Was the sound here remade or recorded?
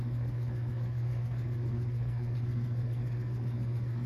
remade